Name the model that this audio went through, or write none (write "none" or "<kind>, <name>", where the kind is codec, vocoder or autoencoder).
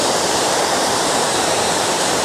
vocoder, BigVGAN v2